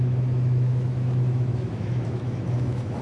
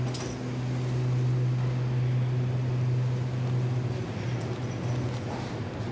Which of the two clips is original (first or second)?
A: second